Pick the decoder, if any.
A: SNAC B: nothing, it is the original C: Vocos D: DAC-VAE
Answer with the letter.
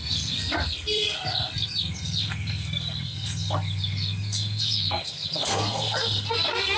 A